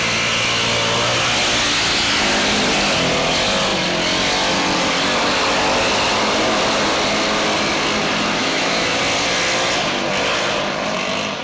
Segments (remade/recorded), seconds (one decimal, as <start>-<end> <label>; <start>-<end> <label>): 0.0-8.4 recorded; 8.4-9.0 remade; 9.0-11.4 recorded